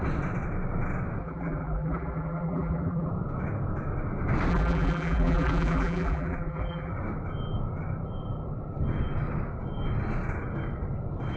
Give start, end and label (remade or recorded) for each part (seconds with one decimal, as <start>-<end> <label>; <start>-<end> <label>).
0.0-1.2 recorded; 1.2-3.1 remade; 3.1-4.5 recorded; 4.5-6.9 remade; 6.9-11.4 recorded

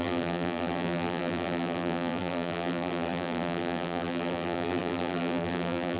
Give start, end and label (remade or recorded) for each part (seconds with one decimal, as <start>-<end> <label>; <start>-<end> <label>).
0.0-6.0 remade

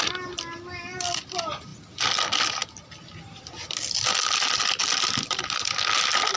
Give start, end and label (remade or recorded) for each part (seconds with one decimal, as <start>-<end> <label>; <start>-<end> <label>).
0.0-6.4 recorded

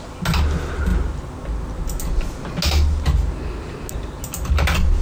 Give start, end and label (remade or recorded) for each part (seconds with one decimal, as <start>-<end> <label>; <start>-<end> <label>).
0.0-5.0 recorded

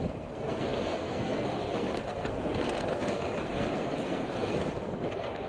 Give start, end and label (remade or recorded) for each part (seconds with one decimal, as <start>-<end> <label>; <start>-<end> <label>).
0.0-5.5 remade

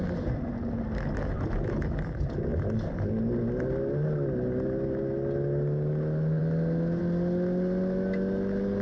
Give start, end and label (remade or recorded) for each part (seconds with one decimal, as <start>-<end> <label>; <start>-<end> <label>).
0.0-8.8 recorded

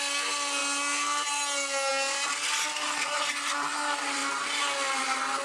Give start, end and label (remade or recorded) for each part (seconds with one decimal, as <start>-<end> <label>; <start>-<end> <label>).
0.0-5.4 recorded